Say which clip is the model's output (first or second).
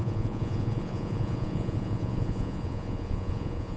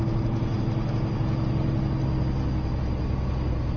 first